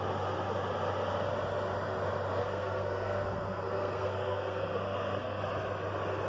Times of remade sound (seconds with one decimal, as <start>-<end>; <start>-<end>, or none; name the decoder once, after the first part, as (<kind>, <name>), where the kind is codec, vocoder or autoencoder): 2.4-5.4 (codec, SNAC)